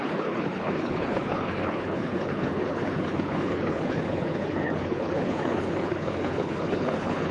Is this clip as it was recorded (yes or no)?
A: no